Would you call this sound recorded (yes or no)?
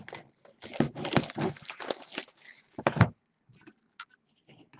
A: yes